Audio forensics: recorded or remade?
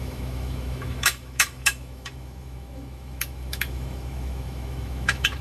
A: remade